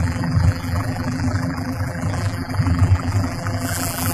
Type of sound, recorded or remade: remade